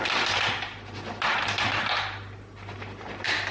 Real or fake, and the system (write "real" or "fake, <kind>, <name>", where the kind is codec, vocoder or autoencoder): real